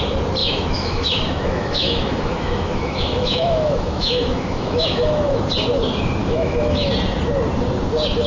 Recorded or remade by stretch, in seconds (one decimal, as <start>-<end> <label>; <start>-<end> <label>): 0.0-0.4 recorded; 0.4-5.4 remade; 5.4-6.2 recorded; 6.2-6.9 remade; 6.9-8.3 recorded